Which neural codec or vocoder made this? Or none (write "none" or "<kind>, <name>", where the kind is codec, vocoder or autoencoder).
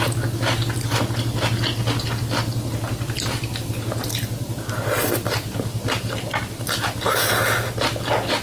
none